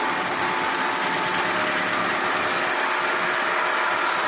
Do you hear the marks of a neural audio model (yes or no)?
no